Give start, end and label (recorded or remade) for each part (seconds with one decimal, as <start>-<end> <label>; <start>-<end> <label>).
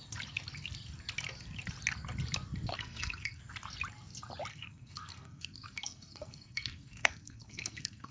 0.0-2.7 recorded; 2.7-3.4 remade; 3.4-4.5 recorded; 4.5-8.1 remade